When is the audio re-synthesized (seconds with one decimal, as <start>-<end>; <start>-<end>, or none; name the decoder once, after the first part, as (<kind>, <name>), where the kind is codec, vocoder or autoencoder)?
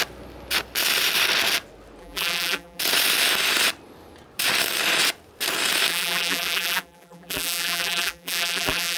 2.0-2.8 (vocoder, BigVGAN v2); 5.9-9.0